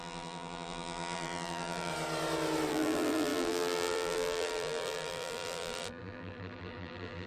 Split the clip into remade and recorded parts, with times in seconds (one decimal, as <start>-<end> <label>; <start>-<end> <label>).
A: 0.0-1.9 remade; 1.9-2.7 recorded; 2.7-7.3 remade